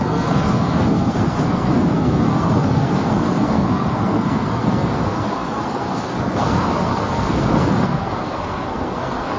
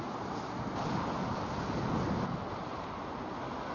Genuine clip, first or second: second